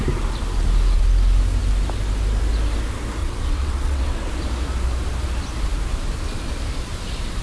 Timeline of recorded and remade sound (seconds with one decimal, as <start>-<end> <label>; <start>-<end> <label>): 0.0-3.2 recorded; 3.2-4.3 remade; 4.3-7.4 recorded